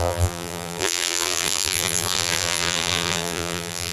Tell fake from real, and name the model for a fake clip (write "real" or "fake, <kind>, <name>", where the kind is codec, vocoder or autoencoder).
fake, vocoder, BigVGAN v2